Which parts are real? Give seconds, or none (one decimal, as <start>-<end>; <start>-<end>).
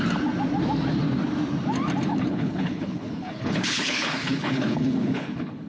0.0-2.1